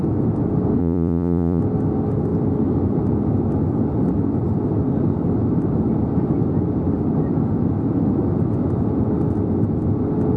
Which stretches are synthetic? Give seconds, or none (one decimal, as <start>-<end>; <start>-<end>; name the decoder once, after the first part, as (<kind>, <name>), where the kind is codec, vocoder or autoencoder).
0.8-1.6 (vocoder, Vocos)